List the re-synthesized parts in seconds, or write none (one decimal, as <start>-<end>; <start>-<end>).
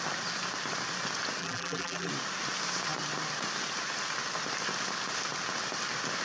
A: 1.4-2.1